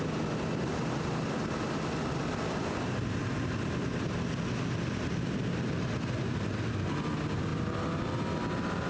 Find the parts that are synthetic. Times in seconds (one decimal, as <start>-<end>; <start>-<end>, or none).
none